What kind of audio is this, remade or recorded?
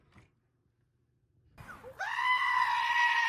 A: recorded